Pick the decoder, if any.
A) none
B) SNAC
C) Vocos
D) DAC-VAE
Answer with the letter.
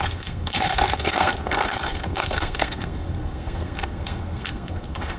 B